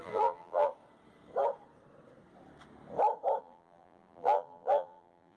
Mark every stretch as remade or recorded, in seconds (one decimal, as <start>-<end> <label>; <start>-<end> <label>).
0.0-0.7 remade; 0.7-3.4 recorded; 3.4-5.4 remade